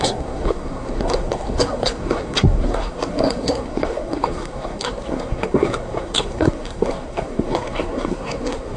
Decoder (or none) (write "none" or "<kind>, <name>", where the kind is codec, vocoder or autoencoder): codec, SNAC